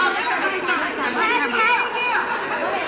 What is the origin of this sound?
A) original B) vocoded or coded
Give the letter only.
A